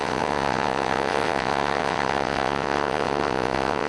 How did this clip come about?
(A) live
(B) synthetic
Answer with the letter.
B